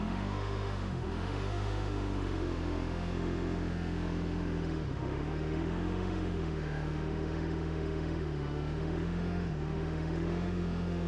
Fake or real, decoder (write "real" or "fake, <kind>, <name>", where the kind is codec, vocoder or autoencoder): fake, autoencoder, DAC-VAE